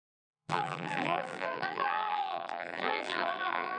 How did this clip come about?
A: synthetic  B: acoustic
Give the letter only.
A